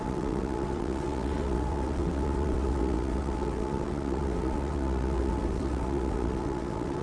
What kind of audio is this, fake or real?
fake